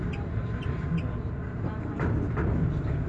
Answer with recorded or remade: recorded